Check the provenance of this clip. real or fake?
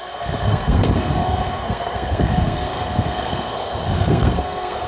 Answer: fake